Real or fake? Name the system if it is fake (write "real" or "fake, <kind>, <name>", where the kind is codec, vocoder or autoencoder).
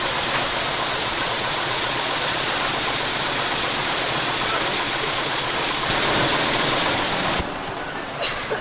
fake, vocoder, Vocos